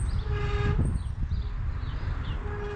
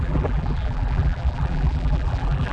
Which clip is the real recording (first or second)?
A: first